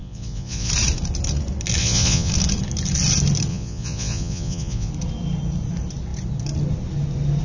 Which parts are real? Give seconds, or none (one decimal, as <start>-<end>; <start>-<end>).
0.7-1.8; 2.3-3.5; 4.9-7.4